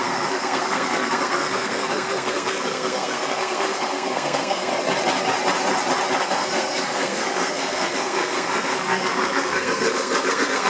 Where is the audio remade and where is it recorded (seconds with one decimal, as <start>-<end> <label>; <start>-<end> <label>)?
0.0-4.7 remade; 4.7-6.2 recorded; 6.2-10.7 remade